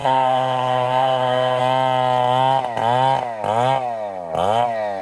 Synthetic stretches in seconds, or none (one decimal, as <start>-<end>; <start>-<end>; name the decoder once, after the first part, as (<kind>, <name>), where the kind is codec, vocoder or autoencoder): 0.0-1.6 (codec, SNAC)